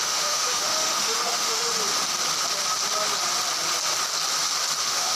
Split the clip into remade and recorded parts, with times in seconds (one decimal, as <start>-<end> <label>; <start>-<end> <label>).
0.0-1.7 remade; 1.7-4.8 recorded; 4.8-5.2 remade